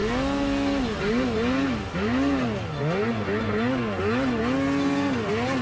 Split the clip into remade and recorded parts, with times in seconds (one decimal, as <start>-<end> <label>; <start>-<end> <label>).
0.0-5.6 recorded